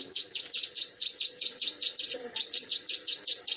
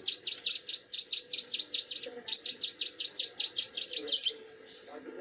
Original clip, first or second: second